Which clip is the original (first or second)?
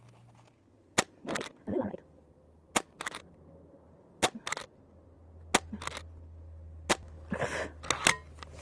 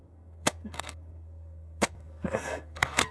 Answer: first